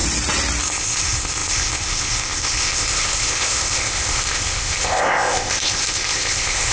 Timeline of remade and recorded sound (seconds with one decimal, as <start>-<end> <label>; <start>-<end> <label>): 0.0-0.6 recorded; 0.6-6.7 remade

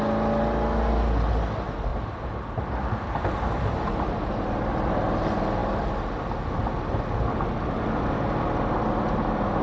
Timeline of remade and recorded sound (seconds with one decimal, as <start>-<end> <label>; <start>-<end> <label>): 0.0-9.6 recorded

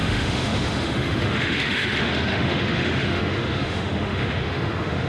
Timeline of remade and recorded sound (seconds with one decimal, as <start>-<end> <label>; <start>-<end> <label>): 0.0-5.1 remade

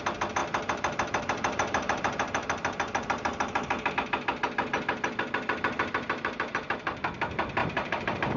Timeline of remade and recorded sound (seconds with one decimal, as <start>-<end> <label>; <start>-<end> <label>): 0.0-0.4 recorded; 0.4-3.9 remade; 3.9-7.6 recorded; 7.6-8.4 remade

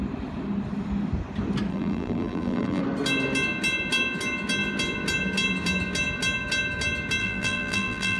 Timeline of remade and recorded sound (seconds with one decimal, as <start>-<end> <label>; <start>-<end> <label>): 0.0-1.7 recorded; 1.7-2.8 remade; 2.8-7.2 recorded; 7.2-8.2 remade

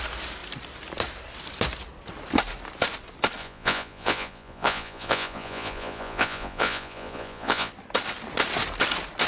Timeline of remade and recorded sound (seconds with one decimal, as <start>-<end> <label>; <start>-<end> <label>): 0.0-3.4 recorded; 3.4-7.7 remade; 7.7-9.3 recorded

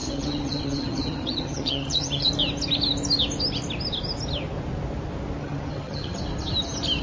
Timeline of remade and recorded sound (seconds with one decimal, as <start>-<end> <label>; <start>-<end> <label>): 0.0-2.3 remade; 2.3-5.4 recorded; 5.4-6.2 remade; 6.2-7.0 recorded